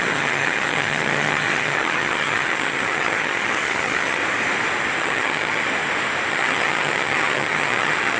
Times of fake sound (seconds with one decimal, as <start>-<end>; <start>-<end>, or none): 0.0-4.2; 5.0-5.6; 6.3-8.2